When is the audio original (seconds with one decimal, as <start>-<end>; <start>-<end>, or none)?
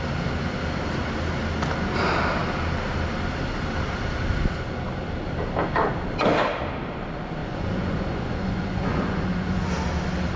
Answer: 0.0-7.4; 9.7-10.4